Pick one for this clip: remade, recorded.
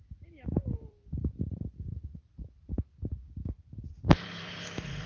remade